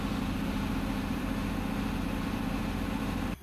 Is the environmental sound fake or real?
fake